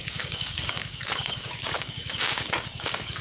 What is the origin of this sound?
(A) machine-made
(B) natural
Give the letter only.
A